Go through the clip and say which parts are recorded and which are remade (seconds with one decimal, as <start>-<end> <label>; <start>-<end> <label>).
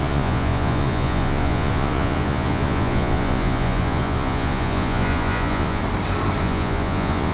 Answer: 0.0-5.8 remade; 5.8-6.4 recorded; 6.4-7.3 remade